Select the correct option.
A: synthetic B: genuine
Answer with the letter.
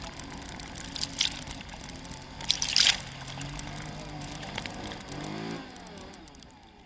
B